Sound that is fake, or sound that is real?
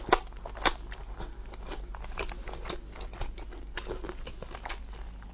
real